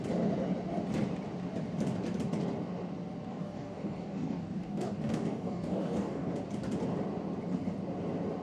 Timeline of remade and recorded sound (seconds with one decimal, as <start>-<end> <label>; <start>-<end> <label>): 0.0-3.3 recorded; 3.3-6.3 remade; 6.3-8.4 recorded